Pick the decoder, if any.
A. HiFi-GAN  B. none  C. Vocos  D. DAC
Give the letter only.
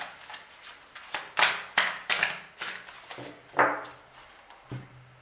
B